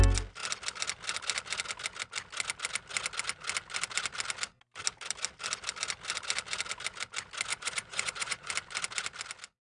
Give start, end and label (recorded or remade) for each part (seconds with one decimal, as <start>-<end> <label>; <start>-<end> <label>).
0.0-7.5 recorded; 7.5-8.5 remade; 8.5-9.7 recorded